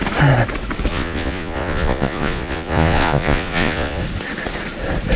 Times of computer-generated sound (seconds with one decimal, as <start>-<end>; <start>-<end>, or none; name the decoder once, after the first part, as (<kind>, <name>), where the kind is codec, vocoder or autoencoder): 0.9-4.0 (vocoder, Vocos)